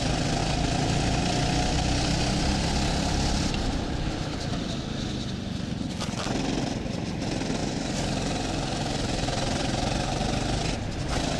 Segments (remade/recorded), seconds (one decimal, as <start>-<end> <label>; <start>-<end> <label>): 0.0-0.4 recorded; 0.4-1.2 remade; 1.2-7.6 recorded; 7.6-10.7 remade; 10.7-11.4 recorded